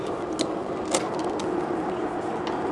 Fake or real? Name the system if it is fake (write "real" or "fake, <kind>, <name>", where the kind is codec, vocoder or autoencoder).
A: real